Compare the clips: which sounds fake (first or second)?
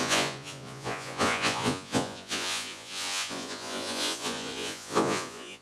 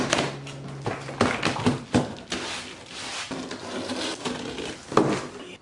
first